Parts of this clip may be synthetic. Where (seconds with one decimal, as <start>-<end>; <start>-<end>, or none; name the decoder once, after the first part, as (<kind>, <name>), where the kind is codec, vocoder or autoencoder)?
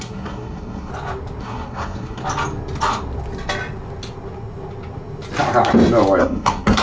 0.0-0.9 (codec, SNAC); 1.4-2.2; 6.2-6.8